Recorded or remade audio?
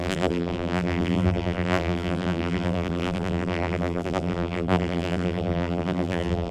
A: remade